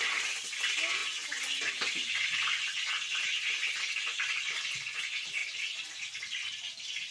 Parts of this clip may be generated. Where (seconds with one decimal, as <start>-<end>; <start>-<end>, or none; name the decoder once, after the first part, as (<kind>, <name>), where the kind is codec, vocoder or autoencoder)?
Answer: none